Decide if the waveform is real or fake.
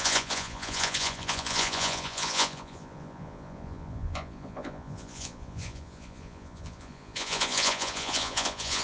fake